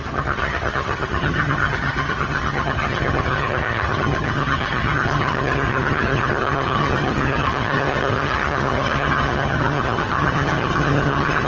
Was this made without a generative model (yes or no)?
no